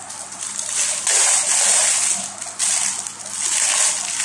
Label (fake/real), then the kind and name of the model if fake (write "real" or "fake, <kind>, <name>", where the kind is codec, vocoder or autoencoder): real